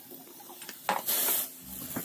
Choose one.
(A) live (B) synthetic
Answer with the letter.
A